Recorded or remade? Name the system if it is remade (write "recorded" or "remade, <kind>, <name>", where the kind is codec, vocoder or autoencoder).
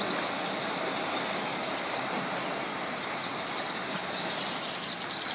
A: recorded